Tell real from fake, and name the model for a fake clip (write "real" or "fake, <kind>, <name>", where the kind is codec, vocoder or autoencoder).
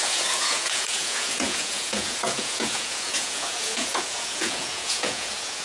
fake, vocoder, Vocos